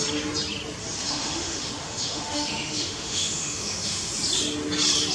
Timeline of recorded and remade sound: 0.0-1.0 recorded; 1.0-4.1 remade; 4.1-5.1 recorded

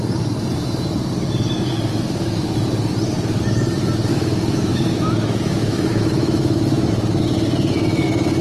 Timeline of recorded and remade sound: 0.0-1.9 recorded; 1.9-2.5 remade; 2.5-4.1 recorded; 4.1-6.9 remade; 6.9-8.4 recorded

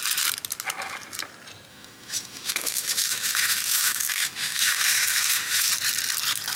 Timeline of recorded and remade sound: 0.0-1.7 recorded; 1.7-5.7 remade; 5.7-6.6 recorded

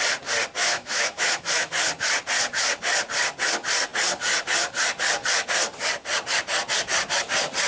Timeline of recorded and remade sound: 0.0-0.6 recorded; 0.6-1.7 remade; 1.7-7.7 recorded

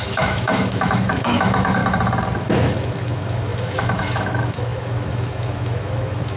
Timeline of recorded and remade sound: 0.0-1.8 remade; 1.8-2.4 recorded; 2.4-6.4 remade

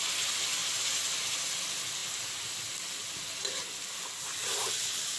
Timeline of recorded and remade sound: 0.0-5.2 recorded

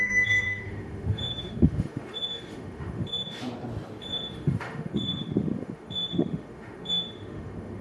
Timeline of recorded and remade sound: 0.0-3.4 remade; 3.4-4.0 recorded; 4.0-7.8 remade